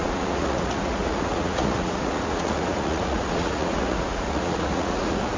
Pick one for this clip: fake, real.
fake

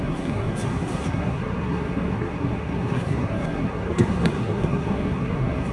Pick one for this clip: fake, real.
fake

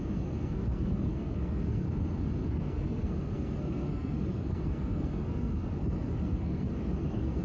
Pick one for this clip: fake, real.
fake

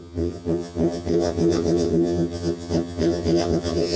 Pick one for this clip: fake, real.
fake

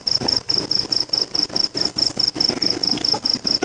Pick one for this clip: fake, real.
real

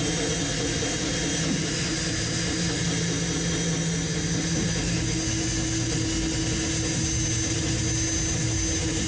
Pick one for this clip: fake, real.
real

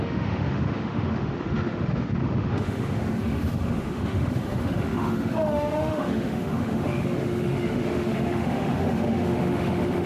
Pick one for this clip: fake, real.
fake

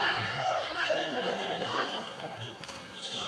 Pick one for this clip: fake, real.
fake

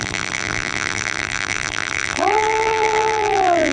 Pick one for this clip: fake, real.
fake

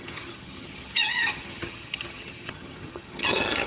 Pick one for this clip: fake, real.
fake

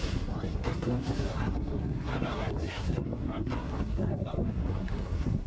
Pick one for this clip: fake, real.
fake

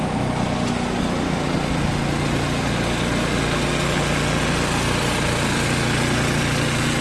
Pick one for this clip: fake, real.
real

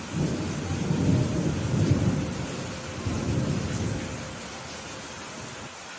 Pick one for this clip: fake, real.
real